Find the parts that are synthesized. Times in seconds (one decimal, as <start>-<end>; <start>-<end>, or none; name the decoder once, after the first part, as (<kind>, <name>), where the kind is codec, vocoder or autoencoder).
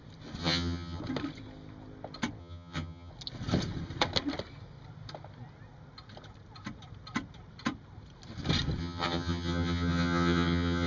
0.4-1.0 (vocoder, HiFi-GAN); 2.4-3.1; 8.8-10.9